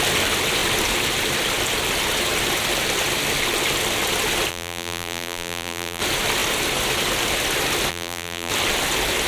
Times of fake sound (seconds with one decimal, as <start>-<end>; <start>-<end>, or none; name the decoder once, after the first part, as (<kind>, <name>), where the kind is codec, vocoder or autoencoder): 4.5-6.0 (vocoder, BigVGAN v2); 7.9-8.5